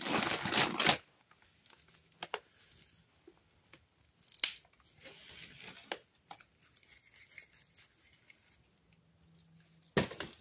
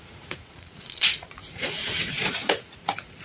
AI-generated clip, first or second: second